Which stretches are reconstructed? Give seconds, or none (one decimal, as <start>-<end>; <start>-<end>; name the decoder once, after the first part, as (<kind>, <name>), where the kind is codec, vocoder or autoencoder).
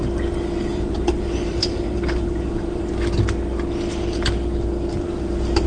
0.7-2.9 (vocoder, BigVGAN v2)